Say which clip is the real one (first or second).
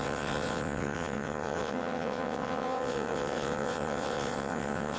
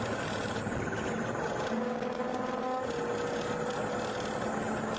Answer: second